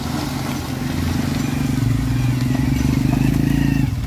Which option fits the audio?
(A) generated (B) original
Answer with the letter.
B